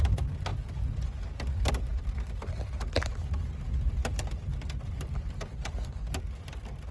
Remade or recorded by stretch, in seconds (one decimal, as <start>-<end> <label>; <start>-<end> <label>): 0.0-6.9 recorded